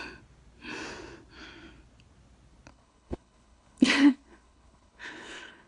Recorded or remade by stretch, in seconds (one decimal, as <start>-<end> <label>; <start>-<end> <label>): 0.0-2.7 recorded; 2.7-5.7 remade